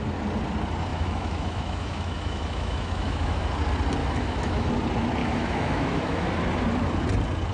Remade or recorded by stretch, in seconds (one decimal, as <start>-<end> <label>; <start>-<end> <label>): 0.0-0.9 recorded; 0.9-3.5 remade; 3.5-4.0 recorded; 4.0-4.7 remade; 4.7-5.2 recorded; 5.2-6.3 remade; 6.3-7.5 recorded